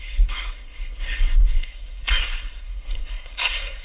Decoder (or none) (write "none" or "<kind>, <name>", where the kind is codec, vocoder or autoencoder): codec, SNAC